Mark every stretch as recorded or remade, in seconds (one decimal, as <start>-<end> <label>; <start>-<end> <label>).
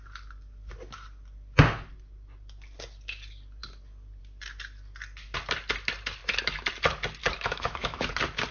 0.0-7.2 recorded; 7.2-8.1 remade; 8.1-8.5 recorded